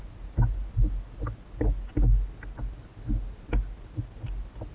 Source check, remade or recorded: recorded